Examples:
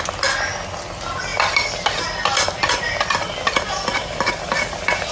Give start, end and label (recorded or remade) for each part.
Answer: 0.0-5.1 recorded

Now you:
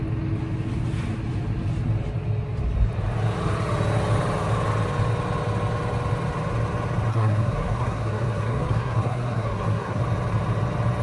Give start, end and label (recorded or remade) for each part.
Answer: 0.0-7.1 recorded; 7.1-10.0 remade; 10.0-11.0 recorded

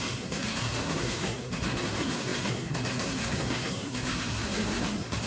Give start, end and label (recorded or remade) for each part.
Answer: 0.0-5.3 remade

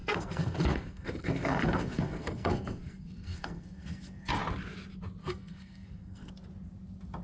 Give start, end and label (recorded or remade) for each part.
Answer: 0.0-4.3 remade; 4.3-5.2 recorded; 5.2-6.3 remade; 6.3-7.2 recorded